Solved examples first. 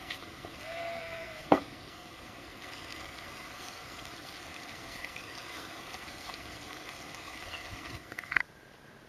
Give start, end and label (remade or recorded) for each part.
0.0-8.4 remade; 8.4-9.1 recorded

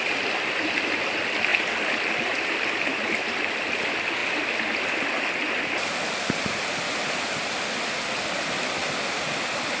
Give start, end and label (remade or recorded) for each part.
0.0-9.8 recorded

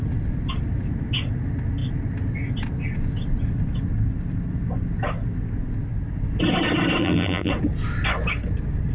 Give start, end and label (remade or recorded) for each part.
0.0-7.0 recorded; 7.0-7.5 remade; 7.5-8.9 recorded